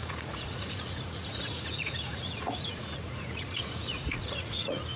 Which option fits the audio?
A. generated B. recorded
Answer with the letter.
A